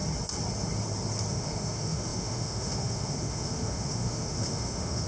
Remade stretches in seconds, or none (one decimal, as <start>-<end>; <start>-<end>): 1.3-5.1